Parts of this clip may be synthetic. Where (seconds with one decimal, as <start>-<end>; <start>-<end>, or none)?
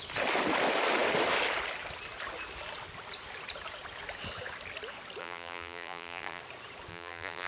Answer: 5.2-6.4; 6.9-7.5